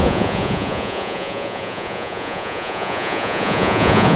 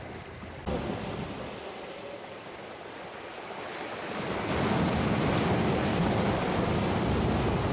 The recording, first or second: second